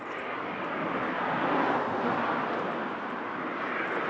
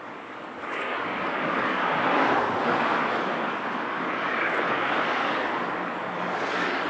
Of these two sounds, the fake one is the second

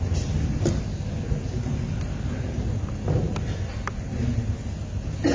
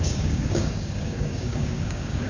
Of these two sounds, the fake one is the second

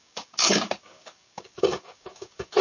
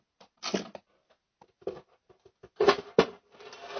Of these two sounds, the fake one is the first